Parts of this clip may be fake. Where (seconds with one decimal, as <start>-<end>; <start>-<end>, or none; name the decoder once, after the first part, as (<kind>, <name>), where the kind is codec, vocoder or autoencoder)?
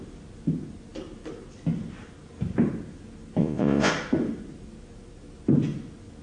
3.4-3.9 (vocoder, Vocos)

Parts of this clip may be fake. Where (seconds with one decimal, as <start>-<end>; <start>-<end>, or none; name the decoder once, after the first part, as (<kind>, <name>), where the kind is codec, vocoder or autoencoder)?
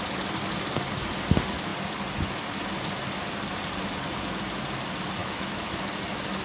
5.2-5.8 (autoencoder, DAC-VAE)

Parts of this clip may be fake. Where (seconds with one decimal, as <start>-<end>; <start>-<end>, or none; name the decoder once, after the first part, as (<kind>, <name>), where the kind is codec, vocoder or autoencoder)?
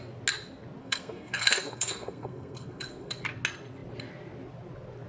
0.8-3.2 (codec, SNAC)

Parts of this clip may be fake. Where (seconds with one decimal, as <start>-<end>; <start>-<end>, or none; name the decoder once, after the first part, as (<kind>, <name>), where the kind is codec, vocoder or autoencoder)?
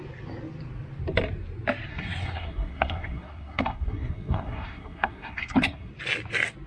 1.9-5.9 (codec, SNAC)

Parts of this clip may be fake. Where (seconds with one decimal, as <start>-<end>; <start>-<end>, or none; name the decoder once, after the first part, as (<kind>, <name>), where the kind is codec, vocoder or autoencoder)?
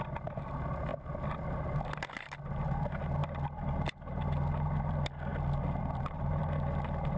5.3-6.4 (vocoder, BigVGAN v2)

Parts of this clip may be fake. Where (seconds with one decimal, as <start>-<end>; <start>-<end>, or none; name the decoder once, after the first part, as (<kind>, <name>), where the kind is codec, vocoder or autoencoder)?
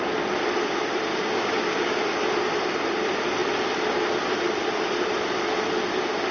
1.1-2.0 (codec, DAC)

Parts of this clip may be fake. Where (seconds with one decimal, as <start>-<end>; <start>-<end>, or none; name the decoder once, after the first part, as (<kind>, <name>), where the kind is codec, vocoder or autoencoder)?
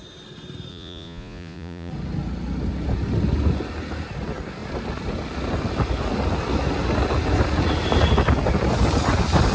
0.7-1.9 (vocoder, Vocos)